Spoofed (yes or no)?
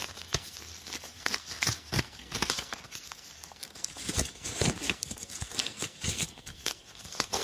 yes